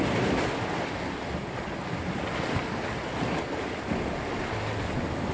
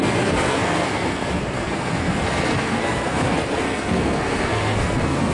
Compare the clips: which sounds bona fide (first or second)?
first